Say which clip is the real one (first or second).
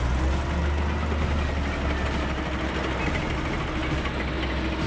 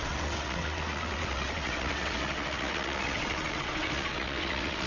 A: first